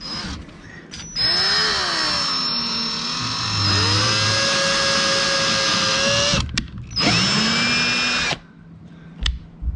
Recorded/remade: recorded